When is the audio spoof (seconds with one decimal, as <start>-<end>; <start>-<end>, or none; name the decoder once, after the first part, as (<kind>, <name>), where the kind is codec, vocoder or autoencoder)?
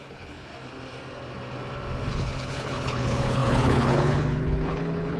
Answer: 0.0-0.5 (codec, HILCodec); 2.1-5.2